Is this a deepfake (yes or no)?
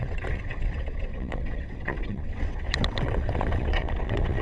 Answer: yes